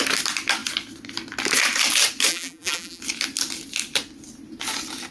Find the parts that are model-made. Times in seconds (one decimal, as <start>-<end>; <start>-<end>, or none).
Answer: 2.3-3.0